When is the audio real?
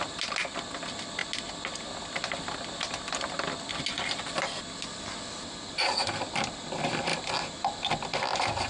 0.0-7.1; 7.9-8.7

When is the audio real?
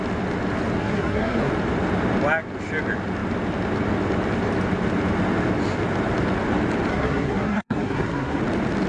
0.0-0.8; 1.5-6.9; 8.4-8.9